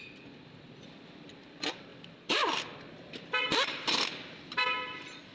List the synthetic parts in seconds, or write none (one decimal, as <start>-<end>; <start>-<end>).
none